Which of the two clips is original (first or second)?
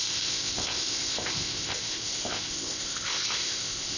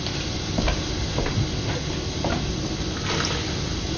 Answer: second